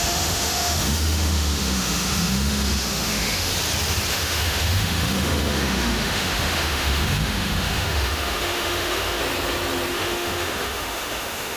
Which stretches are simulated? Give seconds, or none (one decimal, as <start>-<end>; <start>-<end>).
0.0-3.5; 4.1-9.2; 9.9-11.6